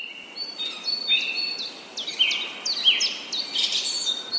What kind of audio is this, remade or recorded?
recorded